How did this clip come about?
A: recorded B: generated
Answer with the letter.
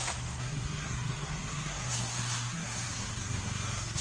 B